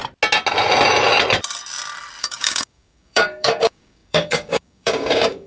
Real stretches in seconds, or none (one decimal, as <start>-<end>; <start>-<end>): 0.0-2.2